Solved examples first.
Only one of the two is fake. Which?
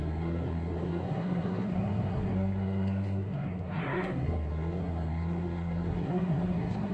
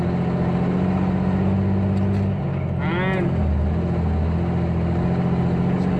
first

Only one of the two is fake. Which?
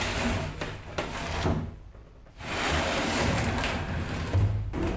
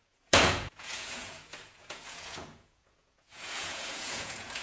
second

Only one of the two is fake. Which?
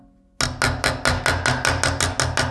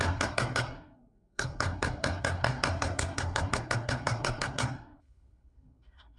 second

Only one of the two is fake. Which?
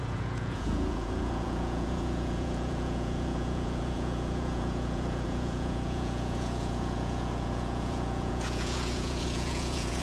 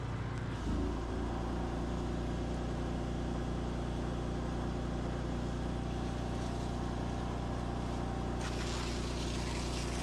first